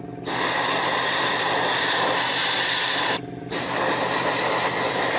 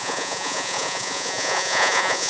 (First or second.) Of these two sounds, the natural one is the first